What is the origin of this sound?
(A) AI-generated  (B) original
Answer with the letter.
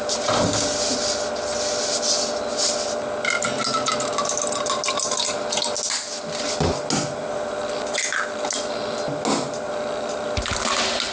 B